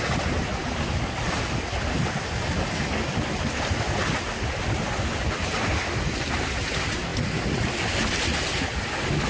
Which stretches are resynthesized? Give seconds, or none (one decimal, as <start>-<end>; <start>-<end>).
none